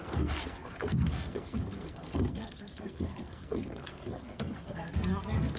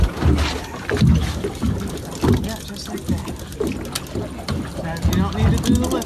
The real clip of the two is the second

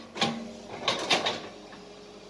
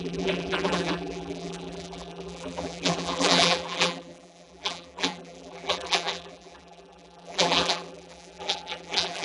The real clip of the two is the first